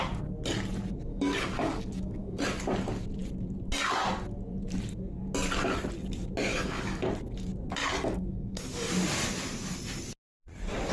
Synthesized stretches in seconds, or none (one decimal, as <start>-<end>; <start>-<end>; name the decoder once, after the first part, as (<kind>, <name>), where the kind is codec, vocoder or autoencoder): 1.1-2.4 (codec, DAC); 6.5-7.1; 7.8-8.9